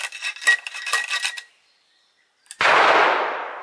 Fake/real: real